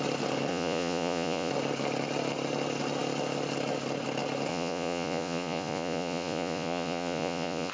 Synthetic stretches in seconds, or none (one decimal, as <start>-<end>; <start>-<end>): 0.5-1.5; 4.5-7.7